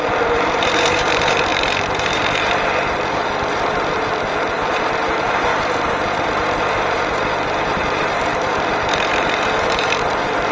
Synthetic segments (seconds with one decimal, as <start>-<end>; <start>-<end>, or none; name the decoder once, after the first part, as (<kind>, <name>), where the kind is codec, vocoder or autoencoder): 0.0-5.5 (vocoder, BigVGAN v2); 6.7-10.5